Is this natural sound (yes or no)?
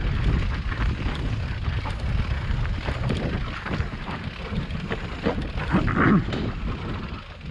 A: yes